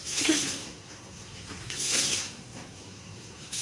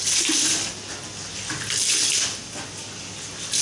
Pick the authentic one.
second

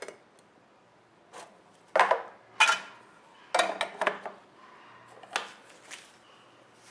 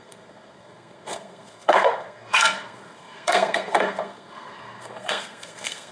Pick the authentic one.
first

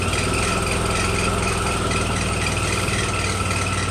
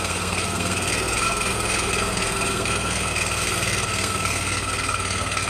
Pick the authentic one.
first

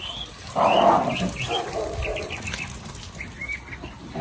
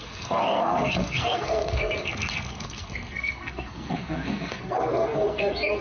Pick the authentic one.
first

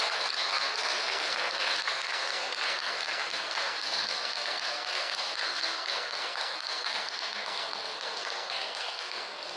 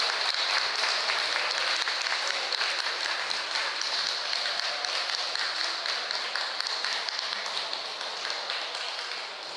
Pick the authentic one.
second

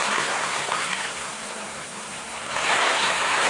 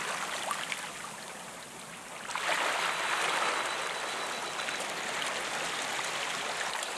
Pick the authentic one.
second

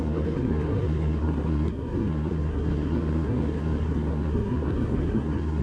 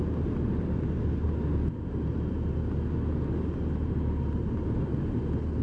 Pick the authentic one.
second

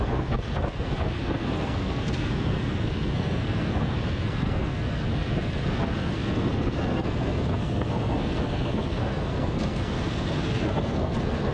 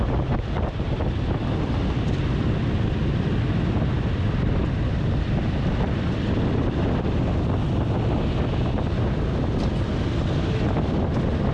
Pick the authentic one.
second